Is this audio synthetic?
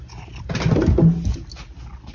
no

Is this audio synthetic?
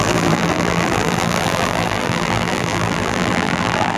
yes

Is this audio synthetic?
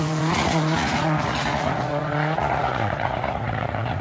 yes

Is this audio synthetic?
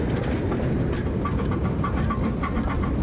no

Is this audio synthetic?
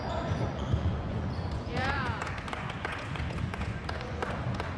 yes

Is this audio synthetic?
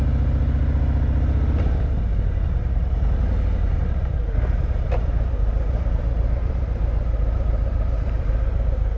yes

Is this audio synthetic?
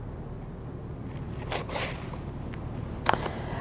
no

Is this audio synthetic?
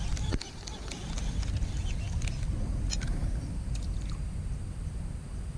no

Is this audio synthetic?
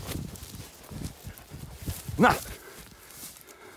no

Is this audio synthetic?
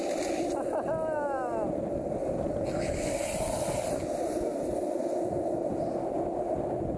no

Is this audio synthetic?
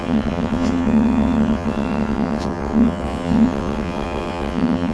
yes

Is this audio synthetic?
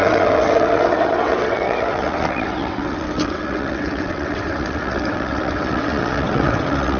yes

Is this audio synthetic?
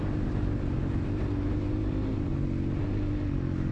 no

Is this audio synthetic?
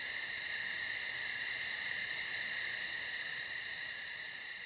yes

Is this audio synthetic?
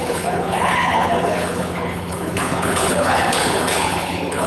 yes